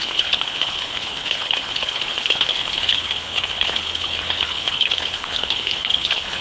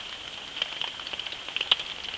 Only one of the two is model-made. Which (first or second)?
first